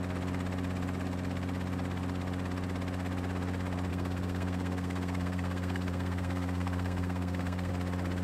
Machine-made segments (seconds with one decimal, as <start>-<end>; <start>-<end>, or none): 3.9-7.7